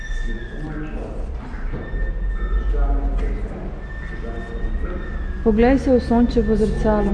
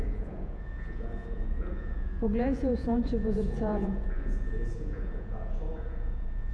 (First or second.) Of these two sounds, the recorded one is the first